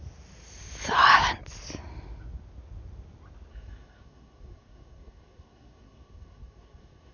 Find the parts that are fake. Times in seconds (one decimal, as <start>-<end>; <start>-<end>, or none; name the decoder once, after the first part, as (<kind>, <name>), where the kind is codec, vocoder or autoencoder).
3.5-7.1 (codec, SNAC)